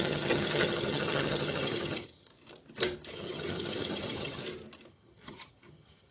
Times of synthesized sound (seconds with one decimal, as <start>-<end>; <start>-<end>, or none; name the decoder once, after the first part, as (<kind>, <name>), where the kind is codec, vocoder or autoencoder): 0.0-2.3 (vocoder, HiFi-GAN); 3.1-4.4; 4.9-6.1